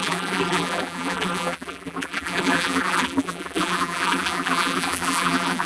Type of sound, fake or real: fake